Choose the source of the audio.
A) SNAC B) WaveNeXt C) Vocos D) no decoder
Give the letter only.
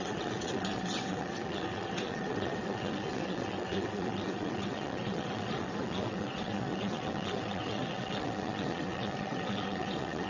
B